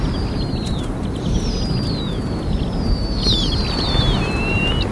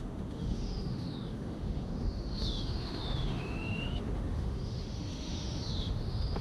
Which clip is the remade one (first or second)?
second